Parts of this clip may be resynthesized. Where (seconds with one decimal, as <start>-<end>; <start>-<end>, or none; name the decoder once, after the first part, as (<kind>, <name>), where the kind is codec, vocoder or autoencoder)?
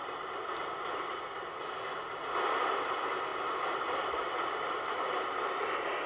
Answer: none